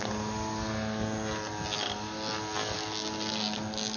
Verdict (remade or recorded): recorded